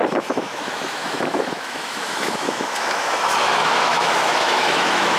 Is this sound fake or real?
fake